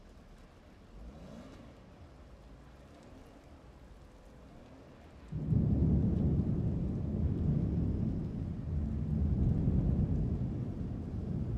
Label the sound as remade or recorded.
recorded